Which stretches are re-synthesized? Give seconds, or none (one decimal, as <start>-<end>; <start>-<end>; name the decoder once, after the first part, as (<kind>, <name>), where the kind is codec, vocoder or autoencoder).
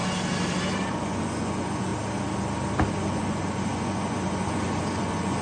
0.9-1.9 (vocoder, Vocos); 2.9-5.4